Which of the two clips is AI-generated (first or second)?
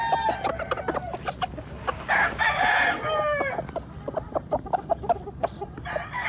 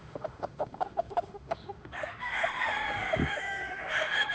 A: second